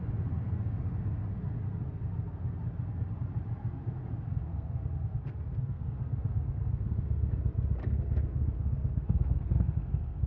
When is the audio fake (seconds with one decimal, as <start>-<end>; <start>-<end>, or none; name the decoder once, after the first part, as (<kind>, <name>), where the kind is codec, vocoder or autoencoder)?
4.5-7.3 (codec, SNAC); 7.8-10.3